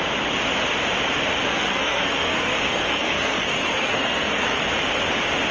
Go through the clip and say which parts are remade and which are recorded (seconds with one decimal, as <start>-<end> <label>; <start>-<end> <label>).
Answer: 0.0-1.5 recorded; 1.5-4.6 remade; 4.6-5.5 recorded